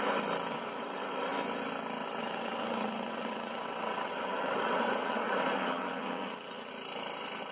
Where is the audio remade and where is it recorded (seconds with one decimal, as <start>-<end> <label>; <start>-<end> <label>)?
0.0-0.5 recorded; 0.5-1.3 remade; 1.3-2.2 recorded; 2.2-6.7 remade; 6.7-7.5 recorded